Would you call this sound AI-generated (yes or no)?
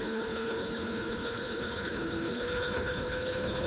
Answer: yes